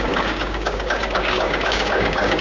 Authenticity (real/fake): fake